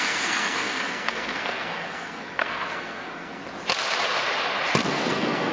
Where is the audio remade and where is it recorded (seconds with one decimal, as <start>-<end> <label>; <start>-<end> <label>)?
0.0-3.4 remade; 3.4-4.9 recorded; 4.9-5.5 remade

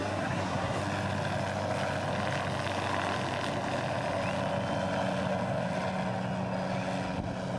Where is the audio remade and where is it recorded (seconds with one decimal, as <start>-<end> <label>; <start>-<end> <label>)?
0.0-0.8 remade; 0.8-7.6 recorded